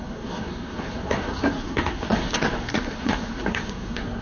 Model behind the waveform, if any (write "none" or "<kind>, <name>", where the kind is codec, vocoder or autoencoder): codec, SNAC